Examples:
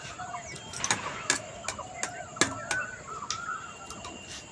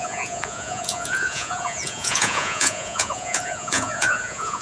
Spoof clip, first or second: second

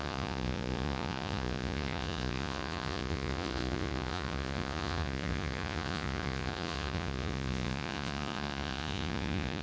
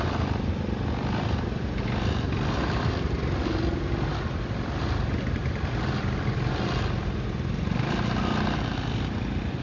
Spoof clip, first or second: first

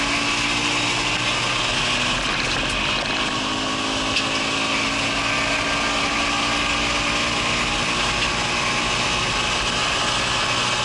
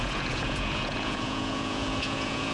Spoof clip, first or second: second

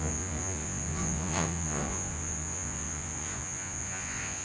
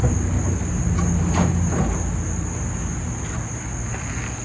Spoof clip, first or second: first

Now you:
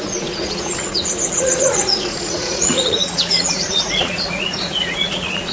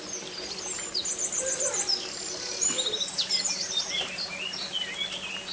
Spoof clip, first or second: first